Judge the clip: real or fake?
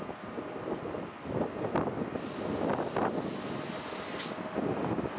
real